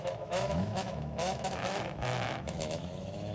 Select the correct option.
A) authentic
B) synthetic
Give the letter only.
B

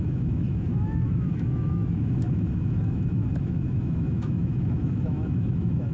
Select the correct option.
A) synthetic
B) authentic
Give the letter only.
A